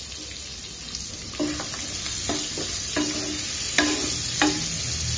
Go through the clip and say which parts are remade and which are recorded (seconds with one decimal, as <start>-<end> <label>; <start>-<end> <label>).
0.0-5.2 recorded